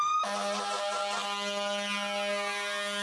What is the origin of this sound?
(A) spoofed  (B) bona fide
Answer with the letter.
B